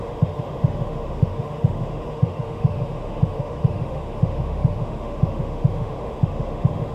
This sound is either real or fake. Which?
fake